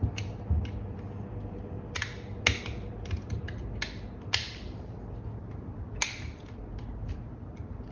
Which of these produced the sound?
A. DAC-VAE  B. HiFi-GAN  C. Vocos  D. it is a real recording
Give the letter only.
D